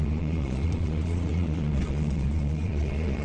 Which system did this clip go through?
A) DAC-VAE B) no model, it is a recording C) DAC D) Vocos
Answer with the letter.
D